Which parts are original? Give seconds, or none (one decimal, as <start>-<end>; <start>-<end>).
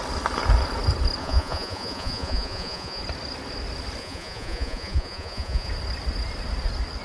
0.0-1.2; 3.0-4.0; 5.7-7.0